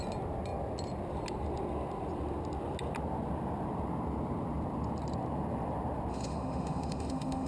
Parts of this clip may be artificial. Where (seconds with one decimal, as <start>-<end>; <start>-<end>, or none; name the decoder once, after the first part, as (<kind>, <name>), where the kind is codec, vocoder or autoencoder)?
6.1-7.5 (autoencoder, DAC-VAE)